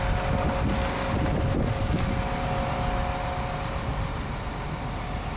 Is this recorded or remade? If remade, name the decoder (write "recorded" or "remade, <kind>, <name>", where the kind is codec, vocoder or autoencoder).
recorded